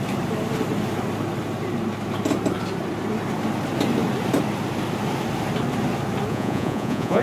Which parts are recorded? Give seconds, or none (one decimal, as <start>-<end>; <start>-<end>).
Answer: 0.0-6.3